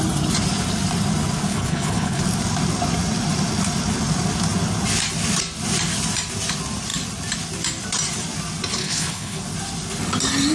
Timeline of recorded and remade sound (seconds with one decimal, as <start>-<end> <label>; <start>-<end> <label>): 0.0-1.5 recorded; 1.5-2.2 remade; 2.2-8.8 recorded; 8.8-9.4 remade; 9.4-10.5 recorded